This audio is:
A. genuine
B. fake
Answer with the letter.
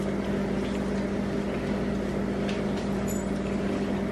A